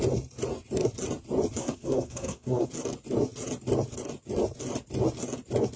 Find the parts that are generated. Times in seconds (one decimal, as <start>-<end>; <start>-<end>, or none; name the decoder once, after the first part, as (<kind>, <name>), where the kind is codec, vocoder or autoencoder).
1.6-2.7 (codec, SNAC)